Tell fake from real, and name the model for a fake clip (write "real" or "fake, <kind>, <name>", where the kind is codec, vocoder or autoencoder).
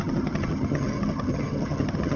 fake, vocoder, HiFi-GAN